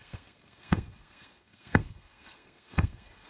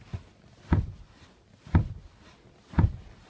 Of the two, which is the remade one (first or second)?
first